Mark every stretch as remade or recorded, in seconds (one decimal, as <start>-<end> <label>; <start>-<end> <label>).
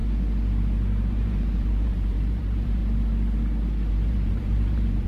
0.0-1.1 recorded; 1.1-2.8 remade; 2.8-3.9 recorded; 3.9-5.1 remade